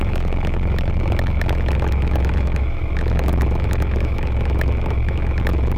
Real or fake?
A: fake